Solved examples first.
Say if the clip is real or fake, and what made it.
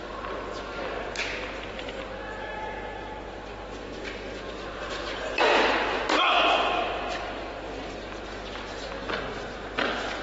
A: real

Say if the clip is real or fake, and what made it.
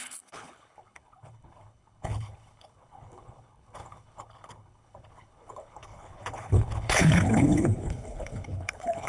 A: fake, codec, HILCodec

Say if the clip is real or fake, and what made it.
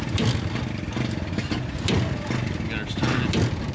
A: real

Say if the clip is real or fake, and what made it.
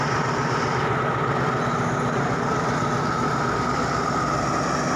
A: real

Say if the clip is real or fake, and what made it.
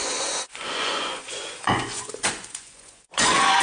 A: fake, vocoder, Vocos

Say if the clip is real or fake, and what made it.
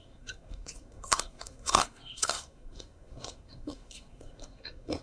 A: fake, codec, SNAC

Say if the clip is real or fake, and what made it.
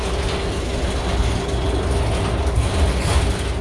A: real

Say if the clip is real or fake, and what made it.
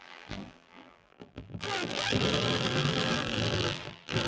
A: fake, vocoder, BigVGAN v2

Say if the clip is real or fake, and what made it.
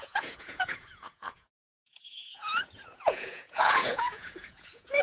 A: fake, vocoder, Vocos